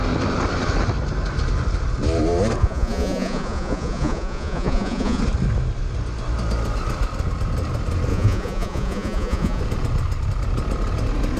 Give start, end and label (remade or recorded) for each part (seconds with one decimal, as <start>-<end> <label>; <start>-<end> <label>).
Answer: 0.0-2.6 recorded; 2.6-5.2 remade; 5.2-8.1 recorded; 8.1-9.6 remade; 9.6-11.4 recorded